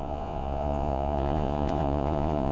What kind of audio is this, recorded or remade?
remade